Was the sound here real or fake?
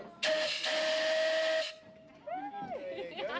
real